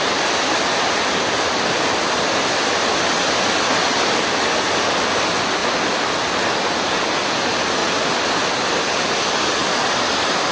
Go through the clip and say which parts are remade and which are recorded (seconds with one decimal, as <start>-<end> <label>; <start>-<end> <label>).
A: 0.0-10.5 recorded